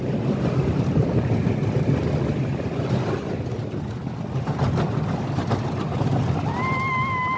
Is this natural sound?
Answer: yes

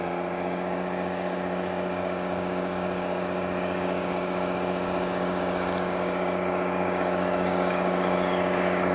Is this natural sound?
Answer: no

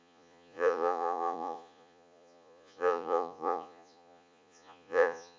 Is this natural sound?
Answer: no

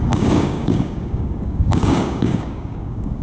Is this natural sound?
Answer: no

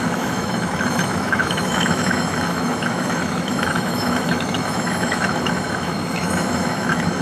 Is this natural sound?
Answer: no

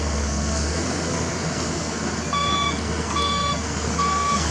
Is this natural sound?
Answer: no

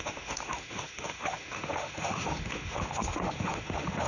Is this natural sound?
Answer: no